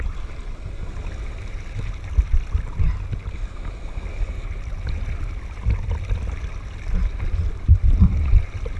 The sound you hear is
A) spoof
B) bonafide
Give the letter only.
B